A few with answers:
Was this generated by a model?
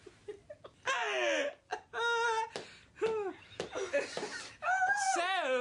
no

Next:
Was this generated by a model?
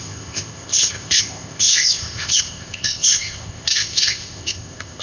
yes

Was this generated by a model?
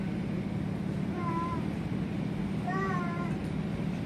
no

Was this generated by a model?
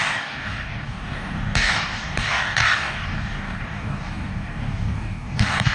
yes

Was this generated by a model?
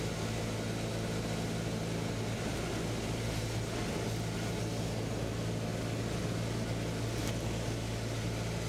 no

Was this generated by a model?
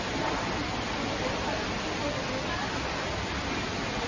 yes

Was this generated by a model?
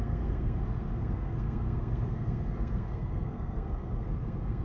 yes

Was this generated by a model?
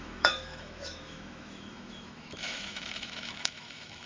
yes